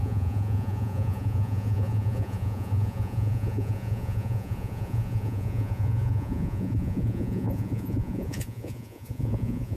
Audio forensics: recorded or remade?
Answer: remade